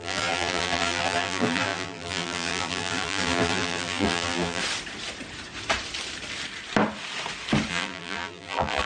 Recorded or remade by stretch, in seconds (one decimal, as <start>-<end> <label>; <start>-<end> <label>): 0.0-4.6 remade; 4.6-7.7 recorded; 7.7-8.9 remade